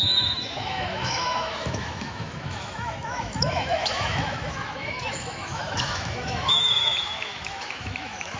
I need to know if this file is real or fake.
fake